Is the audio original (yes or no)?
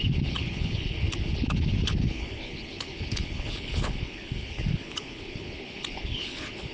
no